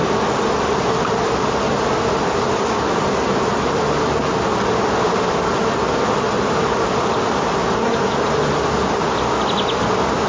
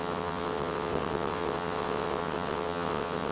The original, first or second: first